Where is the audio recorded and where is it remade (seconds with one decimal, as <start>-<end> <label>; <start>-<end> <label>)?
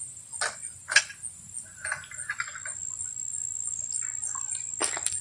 0.0-5.2 recorded